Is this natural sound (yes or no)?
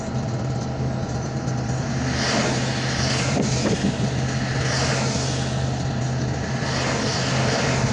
yes